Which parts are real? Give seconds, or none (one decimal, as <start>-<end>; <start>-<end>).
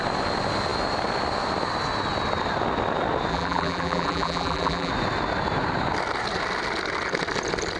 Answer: 0.0-3.3; 4.9-7.8